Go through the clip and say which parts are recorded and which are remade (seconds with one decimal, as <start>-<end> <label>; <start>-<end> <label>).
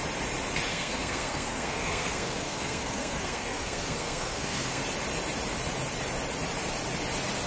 0.0-0.7 recorded; 0.7-4.8 remade; 4.8-7.5 recorded